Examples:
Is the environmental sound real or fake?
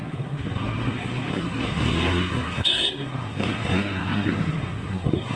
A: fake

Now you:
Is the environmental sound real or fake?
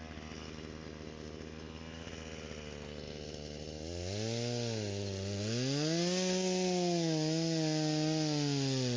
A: real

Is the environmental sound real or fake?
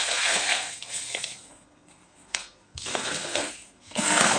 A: fake